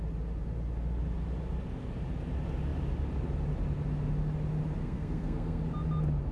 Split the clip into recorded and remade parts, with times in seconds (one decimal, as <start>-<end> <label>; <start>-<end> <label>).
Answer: 0.0-4.8 recorded; 4.8-5.6 remade; 5.6-6.3 recorded